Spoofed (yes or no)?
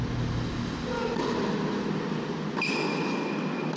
no